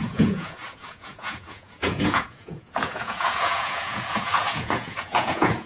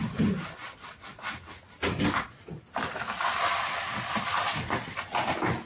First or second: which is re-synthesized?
first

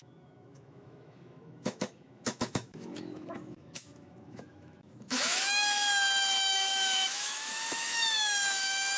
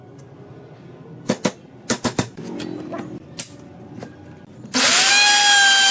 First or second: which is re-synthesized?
first